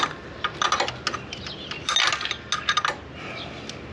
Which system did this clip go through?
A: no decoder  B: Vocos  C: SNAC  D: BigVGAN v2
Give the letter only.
A